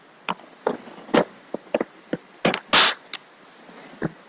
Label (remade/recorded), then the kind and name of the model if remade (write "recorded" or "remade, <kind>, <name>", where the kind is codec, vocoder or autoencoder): recorded